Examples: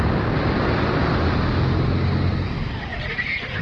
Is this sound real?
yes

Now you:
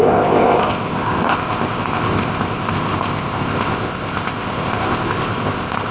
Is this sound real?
no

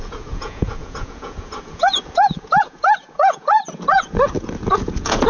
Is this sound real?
no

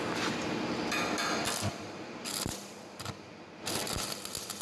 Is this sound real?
yes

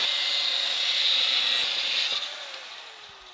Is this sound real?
no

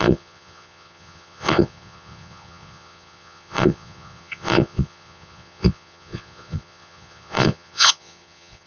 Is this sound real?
no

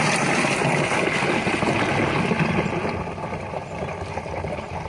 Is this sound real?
yes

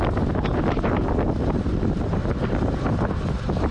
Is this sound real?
yes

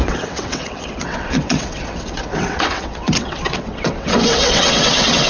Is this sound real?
no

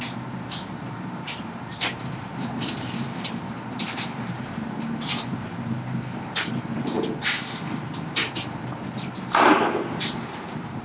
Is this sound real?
no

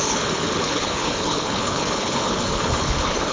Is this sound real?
no